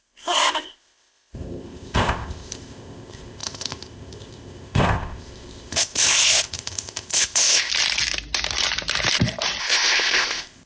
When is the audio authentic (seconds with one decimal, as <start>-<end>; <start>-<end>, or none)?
7.7-9.6